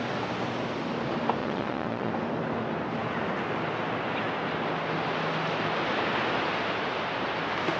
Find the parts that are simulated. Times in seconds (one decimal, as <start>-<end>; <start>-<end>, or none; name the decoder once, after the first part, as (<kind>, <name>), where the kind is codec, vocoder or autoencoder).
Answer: 1.4-2.1 (vocoder, Vocos)